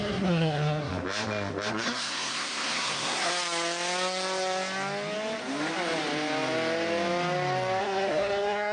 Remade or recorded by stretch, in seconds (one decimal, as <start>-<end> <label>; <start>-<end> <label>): 0.0-0.9 remade; 0.9-1.7 recorded; 1.7-3.3 remade; 3.3-7.8 recorded; 7.8-8.7 remade